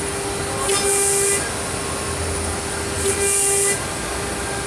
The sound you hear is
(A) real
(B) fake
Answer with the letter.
A